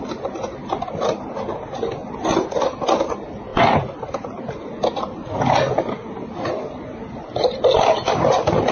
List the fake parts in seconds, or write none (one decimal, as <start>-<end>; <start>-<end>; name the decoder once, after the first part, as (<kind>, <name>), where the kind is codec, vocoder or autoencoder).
none